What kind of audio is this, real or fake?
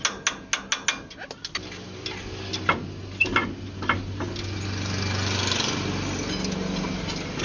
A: real